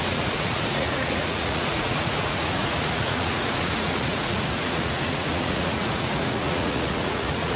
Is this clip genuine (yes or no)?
no